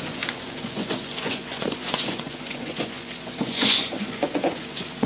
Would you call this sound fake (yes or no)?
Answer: yes